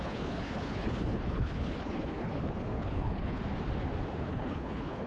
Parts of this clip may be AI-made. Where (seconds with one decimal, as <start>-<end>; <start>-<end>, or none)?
0.0-3.4; 4.3-5.1